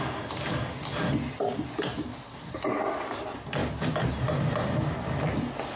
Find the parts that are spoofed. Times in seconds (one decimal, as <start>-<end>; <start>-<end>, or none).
none